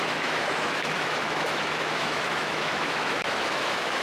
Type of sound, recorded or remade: remade